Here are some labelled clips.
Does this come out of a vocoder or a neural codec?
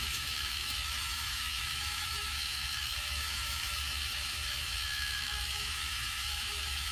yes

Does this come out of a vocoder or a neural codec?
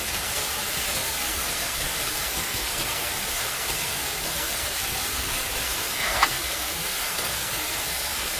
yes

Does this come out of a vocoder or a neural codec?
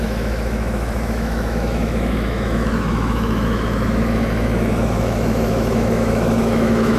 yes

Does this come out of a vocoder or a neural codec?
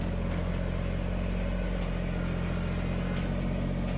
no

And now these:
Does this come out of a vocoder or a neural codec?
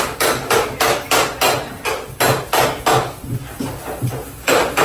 no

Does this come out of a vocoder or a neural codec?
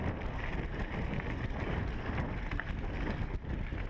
no